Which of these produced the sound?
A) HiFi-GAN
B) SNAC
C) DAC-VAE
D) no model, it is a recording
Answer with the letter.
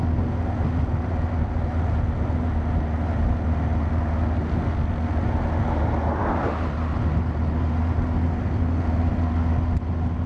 D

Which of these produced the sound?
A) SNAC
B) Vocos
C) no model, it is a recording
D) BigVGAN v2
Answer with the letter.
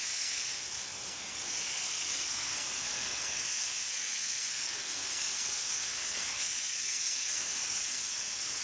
A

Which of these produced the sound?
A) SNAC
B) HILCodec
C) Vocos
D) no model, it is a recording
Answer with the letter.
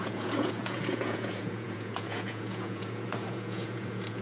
C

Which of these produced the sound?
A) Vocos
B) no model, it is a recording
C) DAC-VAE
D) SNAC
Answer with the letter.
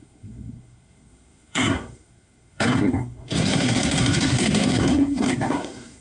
D